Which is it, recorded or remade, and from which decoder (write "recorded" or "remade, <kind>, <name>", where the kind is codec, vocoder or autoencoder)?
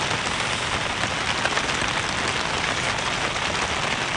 recorded